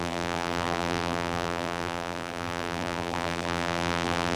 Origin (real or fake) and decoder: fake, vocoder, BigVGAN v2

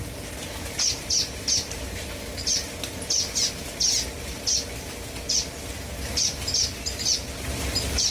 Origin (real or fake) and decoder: real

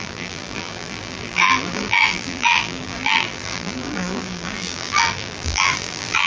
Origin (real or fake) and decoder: fake, vocoder, BigVGAN v2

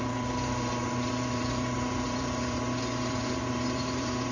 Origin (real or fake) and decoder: fake, vocoder, BigVGAN v2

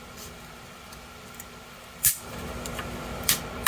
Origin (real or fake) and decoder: fake, vocoder, BigVGAN v2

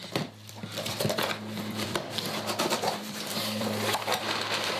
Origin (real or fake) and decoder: fake, vocoder, BigVGAN v2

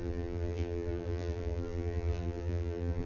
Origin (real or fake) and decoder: fake, vocoder, BigVGAN v2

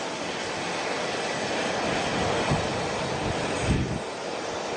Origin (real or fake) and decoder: real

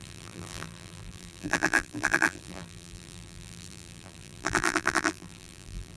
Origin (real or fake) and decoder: fake, vocoder, BigVGAN v2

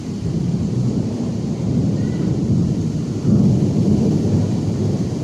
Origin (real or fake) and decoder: fake, vocoder, BigVGAN v2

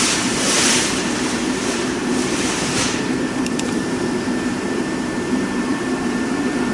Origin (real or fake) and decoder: fake, vocoder, BigVGAN v2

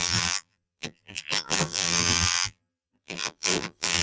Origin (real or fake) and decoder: fake, vocoder, BigVGAN v2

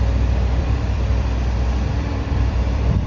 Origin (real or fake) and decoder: fake, vocoder, BigVGAN v2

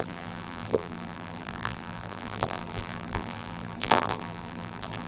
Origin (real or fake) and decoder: fake, vocoder, BigVGAN v2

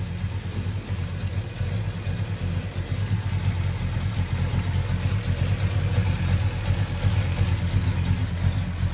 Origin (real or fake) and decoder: real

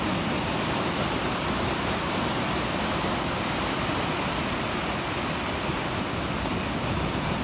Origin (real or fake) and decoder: fake, vocoder, BigVGAN v2